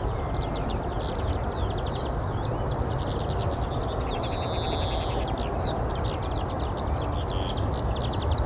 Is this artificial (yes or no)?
no